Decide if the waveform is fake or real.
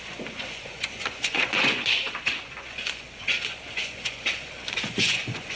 fake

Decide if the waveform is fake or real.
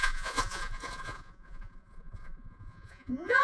fake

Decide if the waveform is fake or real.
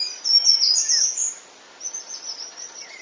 real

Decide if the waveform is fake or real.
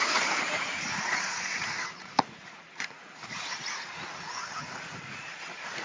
fake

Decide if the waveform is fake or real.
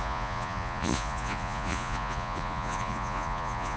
fake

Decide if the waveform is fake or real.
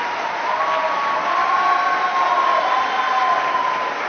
real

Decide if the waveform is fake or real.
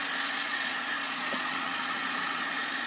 fake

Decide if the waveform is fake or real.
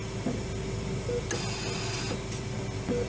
real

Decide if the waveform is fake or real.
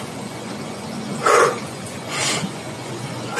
fake